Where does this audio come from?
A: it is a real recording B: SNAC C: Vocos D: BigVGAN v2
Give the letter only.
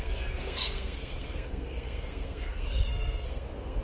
B